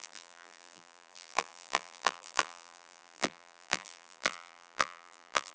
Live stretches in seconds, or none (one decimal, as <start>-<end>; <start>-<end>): none

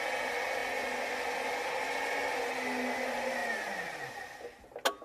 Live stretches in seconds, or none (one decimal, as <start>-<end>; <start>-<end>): 0.0-5.0

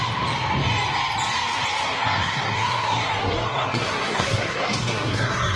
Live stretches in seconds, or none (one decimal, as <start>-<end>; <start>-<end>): 0.0-1.8

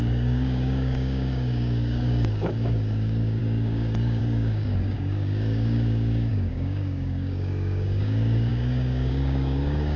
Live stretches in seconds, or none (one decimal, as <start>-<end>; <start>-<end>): none

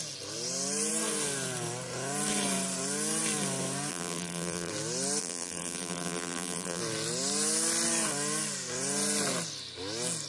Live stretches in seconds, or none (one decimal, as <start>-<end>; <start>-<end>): 0.0-3.9; 4.7-5.2; 6.8-10.3